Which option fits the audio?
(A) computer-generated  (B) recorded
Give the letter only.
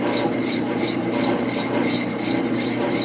B